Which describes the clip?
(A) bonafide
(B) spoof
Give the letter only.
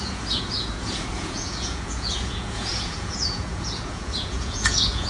B